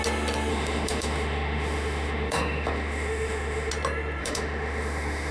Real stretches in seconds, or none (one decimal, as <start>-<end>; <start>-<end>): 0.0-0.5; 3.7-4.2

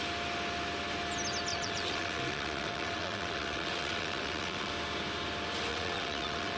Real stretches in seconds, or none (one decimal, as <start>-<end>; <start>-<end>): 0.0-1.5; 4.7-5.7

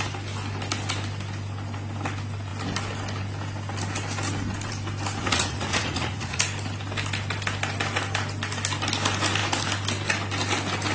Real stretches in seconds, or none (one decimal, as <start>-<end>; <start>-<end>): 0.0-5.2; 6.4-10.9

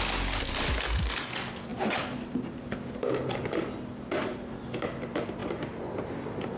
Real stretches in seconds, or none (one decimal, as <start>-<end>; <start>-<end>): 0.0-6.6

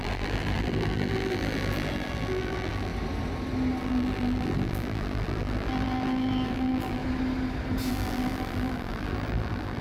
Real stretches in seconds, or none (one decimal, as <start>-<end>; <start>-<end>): 2.9-3.8; 7.0-7.9